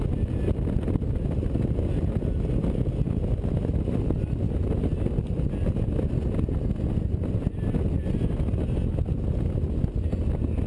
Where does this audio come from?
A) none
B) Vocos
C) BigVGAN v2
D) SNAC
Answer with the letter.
A